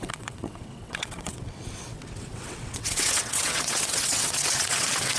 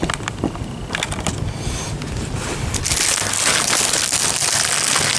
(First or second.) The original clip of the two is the second